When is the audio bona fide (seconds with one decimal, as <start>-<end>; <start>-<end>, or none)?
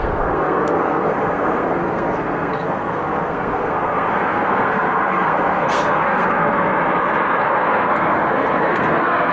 6.7-7.4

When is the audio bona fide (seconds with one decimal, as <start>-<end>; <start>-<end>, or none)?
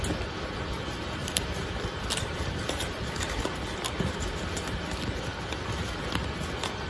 0.0-1.2; 3.4-6.9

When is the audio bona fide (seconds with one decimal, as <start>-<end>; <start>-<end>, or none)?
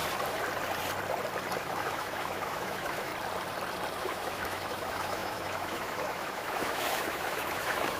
0.0-1.6; 3.1-4.0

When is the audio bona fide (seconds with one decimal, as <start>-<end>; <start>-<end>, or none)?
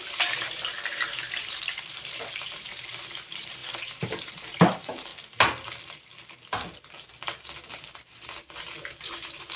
5.1-7.7